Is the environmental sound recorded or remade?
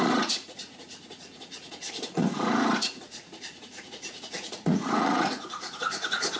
remade